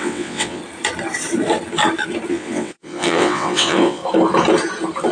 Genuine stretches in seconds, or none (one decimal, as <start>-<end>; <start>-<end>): 0.6-2.3; 4.0-5.1